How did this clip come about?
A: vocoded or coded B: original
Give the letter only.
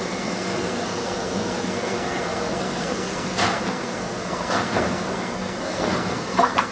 A